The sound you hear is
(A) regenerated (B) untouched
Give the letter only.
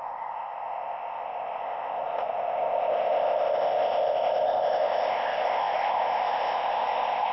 A